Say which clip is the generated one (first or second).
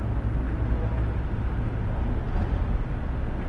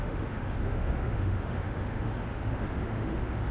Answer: second